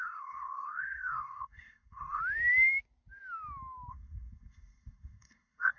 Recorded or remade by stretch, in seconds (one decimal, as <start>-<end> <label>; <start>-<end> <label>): 0.0-2.2 remade; 2.2-3.9 recorded; 3.9-5.8 remade